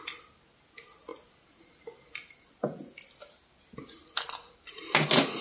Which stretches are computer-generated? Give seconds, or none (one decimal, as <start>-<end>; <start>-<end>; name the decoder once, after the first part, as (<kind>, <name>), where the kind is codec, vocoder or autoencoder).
none